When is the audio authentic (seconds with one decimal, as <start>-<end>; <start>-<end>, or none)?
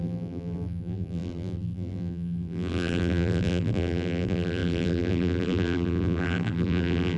none